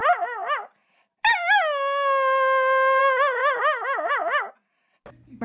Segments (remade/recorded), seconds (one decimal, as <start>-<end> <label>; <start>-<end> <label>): 0.0-5.4 recorded